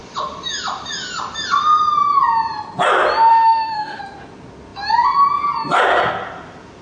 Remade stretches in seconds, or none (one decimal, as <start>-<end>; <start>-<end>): 3.3-4.0